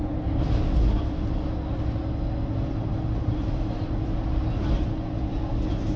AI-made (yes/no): no